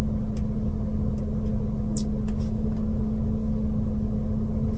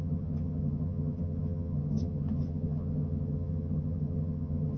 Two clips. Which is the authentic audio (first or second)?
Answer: first